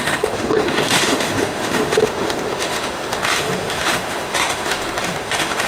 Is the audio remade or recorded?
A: remade